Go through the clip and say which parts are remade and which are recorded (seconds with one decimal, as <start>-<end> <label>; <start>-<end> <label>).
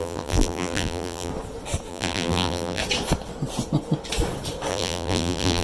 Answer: 0.0-1.3 remade; 1.3-1.9 recorded; 1.9-2.8 remade; 2.8-4.7 recorded; 4.7-5.6 remade